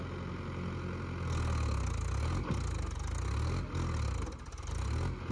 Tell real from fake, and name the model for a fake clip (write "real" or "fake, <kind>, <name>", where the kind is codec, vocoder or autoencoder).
real